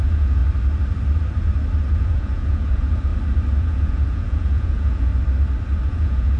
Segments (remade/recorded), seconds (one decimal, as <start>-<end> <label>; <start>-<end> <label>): 0.0-0.4 remade; 0.4-1.9 recorded; 1.9-3.1 remade; 3.1-3.6 recorded; 3.6-5.1 remade; 5.1-5.9 recorded; 5.9-6.4 remade